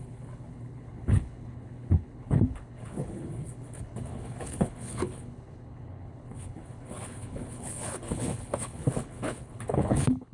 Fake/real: fake